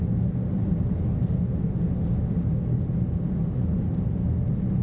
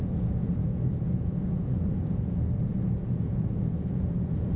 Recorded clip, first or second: first